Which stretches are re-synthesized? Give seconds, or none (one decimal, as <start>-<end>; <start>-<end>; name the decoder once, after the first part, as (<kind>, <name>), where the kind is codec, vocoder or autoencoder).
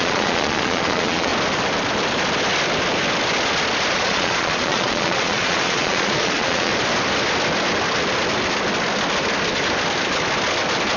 0.0-1.3 (vocoder, Vocos); 3.9-6.7